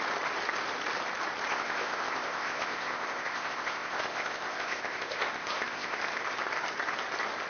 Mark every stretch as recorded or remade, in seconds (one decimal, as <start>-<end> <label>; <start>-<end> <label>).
0.0-1.5 recorded; 1.5-6.0 remade; 6.0-7.5 recorded